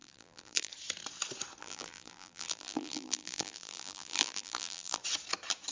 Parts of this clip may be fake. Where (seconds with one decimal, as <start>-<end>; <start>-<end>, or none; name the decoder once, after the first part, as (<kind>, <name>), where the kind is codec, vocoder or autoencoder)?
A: 0.0-0.7 (vocoder, BigVGAN v2); 1.6-5.0